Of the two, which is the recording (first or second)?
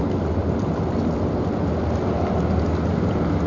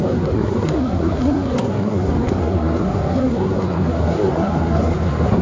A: first